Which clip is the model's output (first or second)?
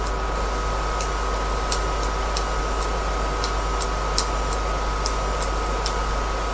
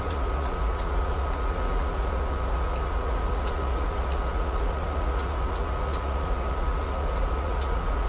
second